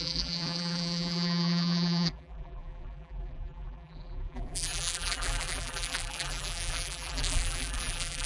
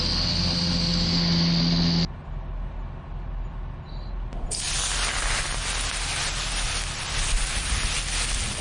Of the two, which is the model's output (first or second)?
first